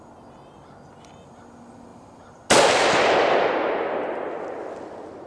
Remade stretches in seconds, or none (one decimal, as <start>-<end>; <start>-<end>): none